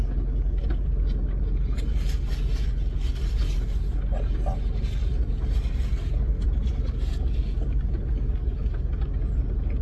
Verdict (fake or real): real